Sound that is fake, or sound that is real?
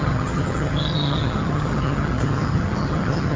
fake